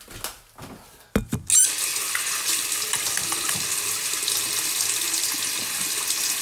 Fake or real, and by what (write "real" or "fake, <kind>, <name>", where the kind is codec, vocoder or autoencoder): real